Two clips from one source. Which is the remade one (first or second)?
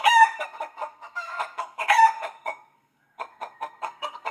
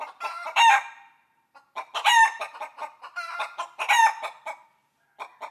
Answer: first